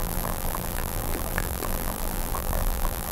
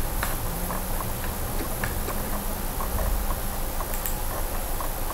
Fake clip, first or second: first